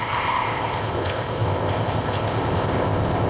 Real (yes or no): no